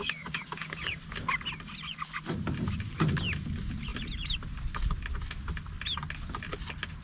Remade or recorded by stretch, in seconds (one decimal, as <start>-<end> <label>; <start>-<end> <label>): 0.0-1.0 remade; 1.0-7.0 recorded